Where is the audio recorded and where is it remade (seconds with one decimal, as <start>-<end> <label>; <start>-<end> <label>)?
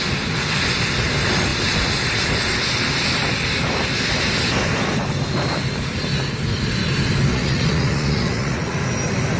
0.0-7.3 recorded; 7.3-8.8 remade; 8.8-9.4 recorded